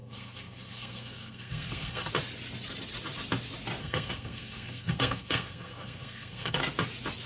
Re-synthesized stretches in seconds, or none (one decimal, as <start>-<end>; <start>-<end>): 0.0-2.1; 3.8-6.6